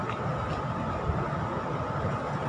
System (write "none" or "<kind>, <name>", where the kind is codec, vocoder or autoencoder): none